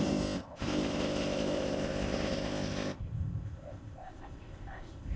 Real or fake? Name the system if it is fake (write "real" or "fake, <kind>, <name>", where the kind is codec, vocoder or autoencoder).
fake, codec, ZipCodec